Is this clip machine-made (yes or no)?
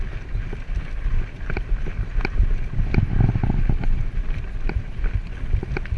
no